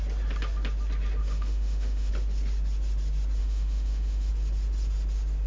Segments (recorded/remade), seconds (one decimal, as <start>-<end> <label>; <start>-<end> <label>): 0.0-1.2 recorded; 1.2-2.1 remade; 2.1-3.4 recorded; 3.4-4.3 remade; 4.3-5.5 recorded